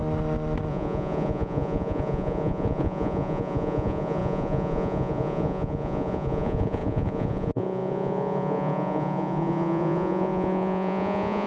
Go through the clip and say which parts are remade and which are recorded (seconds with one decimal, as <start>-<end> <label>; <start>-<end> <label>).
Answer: 0.0-0.7 recorded; 0.7-11.5 remade